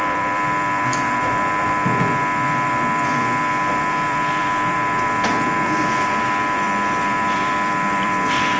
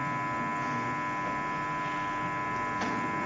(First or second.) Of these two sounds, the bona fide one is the second